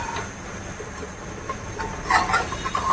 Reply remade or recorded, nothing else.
remade